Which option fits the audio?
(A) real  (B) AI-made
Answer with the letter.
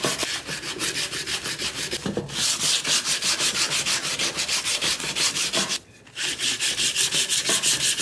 A